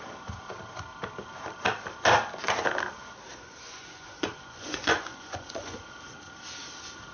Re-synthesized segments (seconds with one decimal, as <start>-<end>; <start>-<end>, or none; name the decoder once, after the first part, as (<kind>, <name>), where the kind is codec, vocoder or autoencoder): 3.3-5.8 (vocoder, Vocos)